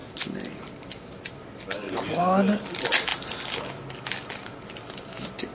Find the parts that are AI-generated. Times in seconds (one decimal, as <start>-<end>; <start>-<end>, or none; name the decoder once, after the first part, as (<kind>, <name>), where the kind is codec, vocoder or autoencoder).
none